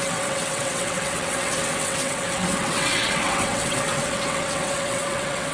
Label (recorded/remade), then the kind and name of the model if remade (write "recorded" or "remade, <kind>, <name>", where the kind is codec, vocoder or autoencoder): remade, vocoder, WaveNeXt